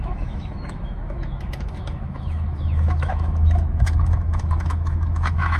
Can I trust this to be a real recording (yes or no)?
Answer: no